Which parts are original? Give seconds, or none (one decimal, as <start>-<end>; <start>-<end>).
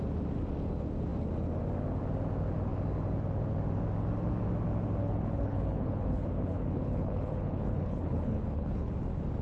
0.0-5.0; 8.9-9.4